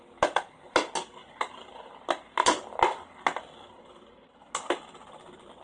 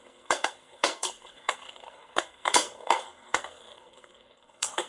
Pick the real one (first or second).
first